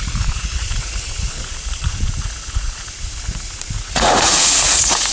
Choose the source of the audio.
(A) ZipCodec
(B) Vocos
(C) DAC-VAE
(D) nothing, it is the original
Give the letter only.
B